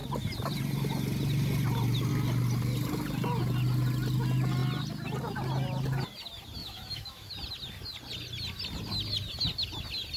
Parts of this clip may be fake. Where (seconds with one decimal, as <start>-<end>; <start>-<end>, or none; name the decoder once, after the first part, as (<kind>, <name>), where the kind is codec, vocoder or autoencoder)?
6.6-7.3 (autoencoder, DAC-VAE)